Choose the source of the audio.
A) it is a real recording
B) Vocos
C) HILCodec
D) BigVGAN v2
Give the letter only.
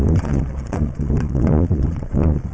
B